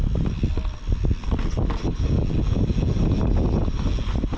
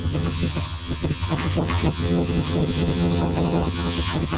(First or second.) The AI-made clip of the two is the second